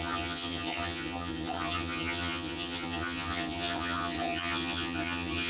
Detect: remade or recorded remade